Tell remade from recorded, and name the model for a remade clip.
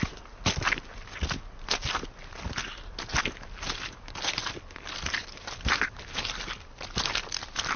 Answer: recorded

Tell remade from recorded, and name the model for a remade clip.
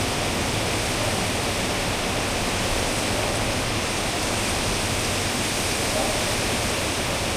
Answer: recorded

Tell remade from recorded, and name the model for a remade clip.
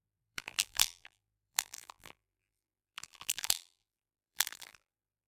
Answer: remade, vocoder, BigVGAN v2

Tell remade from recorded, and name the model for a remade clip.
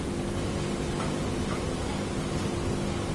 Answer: recorded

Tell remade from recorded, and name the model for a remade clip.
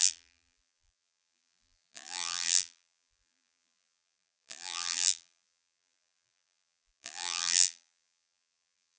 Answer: remade, vocoder, BigVGAN v2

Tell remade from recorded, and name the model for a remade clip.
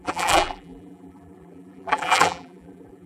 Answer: remade, vocoder, BigVGAN v2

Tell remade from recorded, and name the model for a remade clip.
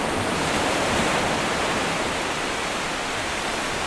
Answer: remade, vocoder, BigVGAN v2